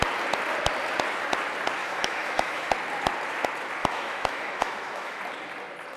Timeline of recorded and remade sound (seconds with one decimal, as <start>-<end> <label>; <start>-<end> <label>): 0.0-1.8 recorded; 1.8-2.7 remade; 2.7-3.8 recorded; 3.8-5.2 remade; 5.2-6.0 recorded